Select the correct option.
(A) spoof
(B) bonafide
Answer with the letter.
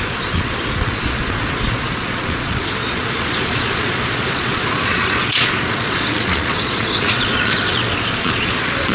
A